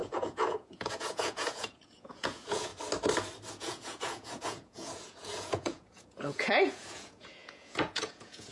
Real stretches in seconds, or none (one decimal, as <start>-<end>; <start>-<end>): 2.7-3.5